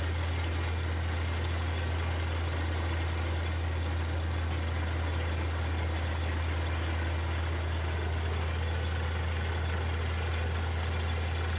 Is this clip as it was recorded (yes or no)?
yes